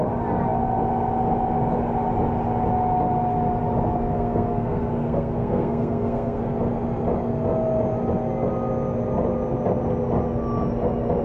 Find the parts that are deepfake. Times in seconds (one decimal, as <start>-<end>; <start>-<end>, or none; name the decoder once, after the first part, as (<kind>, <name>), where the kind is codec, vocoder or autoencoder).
4.1-6.4 (codec, SNAC)